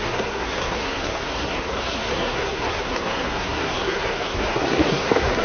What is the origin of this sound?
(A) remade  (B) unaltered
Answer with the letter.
A